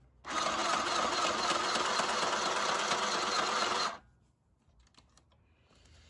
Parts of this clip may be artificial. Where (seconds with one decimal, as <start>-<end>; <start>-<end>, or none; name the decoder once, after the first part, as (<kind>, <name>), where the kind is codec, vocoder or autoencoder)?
none